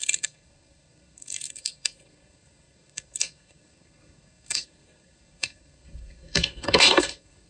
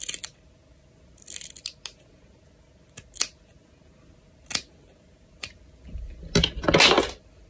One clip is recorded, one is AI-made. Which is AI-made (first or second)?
first